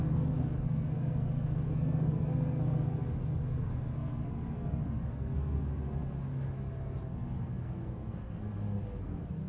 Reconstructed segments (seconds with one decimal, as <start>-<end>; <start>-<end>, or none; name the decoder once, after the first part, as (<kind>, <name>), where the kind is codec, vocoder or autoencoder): 0.0-9.5 (codec, SNAC)